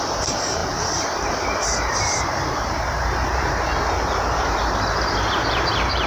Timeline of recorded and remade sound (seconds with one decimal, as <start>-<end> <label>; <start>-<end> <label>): 0.0-6.1 remade

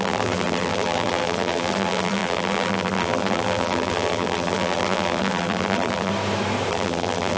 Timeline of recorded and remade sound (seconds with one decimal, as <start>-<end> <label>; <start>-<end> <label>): 0.0-6.1 remade; 6.1-6.7 recorded; 6.7-7.4 remade